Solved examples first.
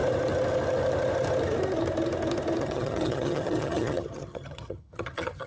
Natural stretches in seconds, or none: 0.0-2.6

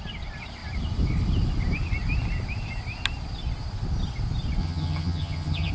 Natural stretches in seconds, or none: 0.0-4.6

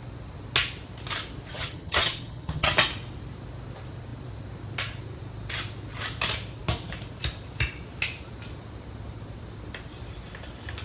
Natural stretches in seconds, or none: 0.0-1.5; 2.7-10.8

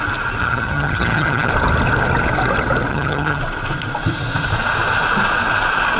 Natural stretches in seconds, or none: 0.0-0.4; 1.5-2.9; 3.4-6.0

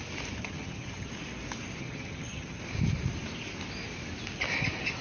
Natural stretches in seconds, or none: 0.0-0.4; 1.1-1.8; 2.6-5.0

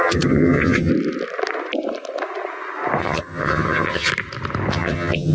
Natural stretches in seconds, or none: 0.9-3.0; 4.1-4.7

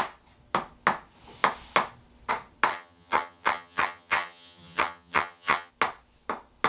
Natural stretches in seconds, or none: 0.0-2.7; 5.7-6.7